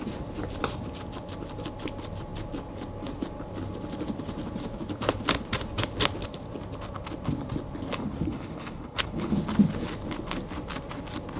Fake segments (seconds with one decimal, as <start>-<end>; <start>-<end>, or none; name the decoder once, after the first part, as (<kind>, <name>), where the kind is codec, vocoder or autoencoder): 8.0-9.3 (codec, HILCodec)